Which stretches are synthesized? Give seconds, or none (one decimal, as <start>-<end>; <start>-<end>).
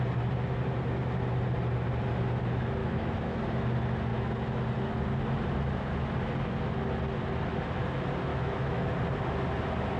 2.8-3.4; 4.1-4.6; 8.3-8.9